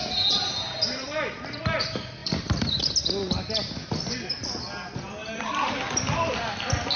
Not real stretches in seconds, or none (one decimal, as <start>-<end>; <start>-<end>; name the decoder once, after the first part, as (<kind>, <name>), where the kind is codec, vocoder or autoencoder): 0.8-1.6 (vocoder, BigVGAN v2); 2.2-2.9; 5.2-6.4